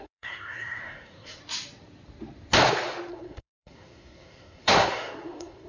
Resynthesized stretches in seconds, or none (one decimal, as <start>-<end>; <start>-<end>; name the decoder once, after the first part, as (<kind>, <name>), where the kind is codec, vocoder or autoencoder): 0.0-1.4 (codec, SNAC); 3.1-5.7